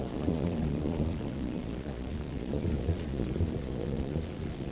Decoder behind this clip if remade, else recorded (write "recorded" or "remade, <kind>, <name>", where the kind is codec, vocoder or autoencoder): remade, vocoder, Vocos